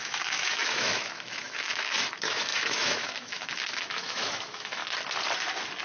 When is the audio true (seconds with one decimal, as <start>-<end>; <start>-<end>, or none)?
4.8-5.8